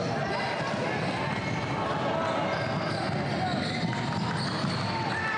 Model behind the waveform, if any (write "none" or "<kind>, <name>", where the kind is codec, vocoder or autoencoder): none